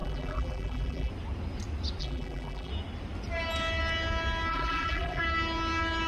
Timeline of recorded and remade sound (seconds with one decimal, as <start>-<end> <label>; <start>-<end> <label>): 0.0-1.1 remade; 1.1-2.0 recorded; 2.0-2.7 remade; 2.7-4.5 recorded; 4.5-5.2 remade; 5.2-6.1 recorded